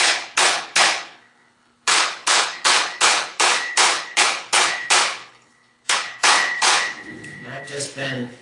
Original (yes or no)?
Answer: no